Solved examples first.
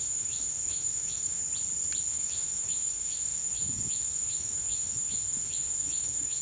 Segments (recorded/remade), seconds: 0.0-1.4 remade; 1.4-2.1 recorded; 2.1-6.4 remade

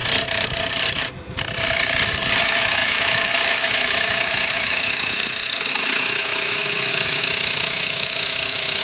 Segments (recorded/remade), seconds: 0.0-2.4 recorded; 2.4-8.8 remade

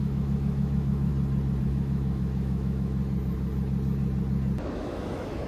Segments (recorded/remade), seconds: 0.0-1.1 remade; 1.1-1.6 recorded; 1.6-3.0 remade; 3.0-4.6 recorded; 4.6-5.5 remade

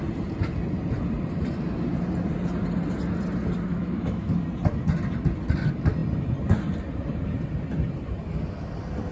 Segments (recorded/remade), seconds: 0.0-3.7 recorded; 3.7-4.4 remade; 4.4-9.1 recorded